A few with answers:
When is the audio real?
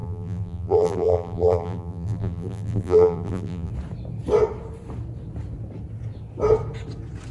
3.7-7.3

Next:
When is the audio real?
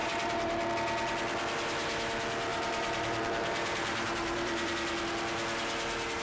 0.7-2.5; 4.7-6.2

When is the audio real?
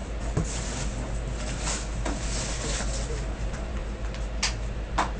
0.0-3.1; 3.8-5.2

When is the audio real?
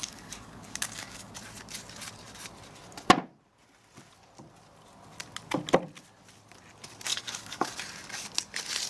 1.3-7.1; 7.8-8.9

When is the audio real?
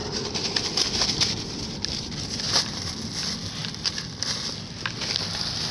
2.9-5.7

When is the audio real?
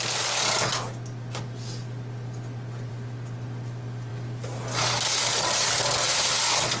0.0-6.8